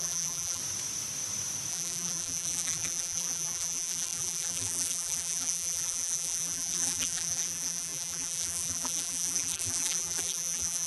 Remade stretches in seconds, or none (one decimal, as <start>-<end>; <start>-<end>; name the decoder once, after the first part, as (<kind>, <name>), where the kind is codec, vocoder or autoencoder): 0.0-0.6 (vocoder, BigVGAN v2); 1.7-10.9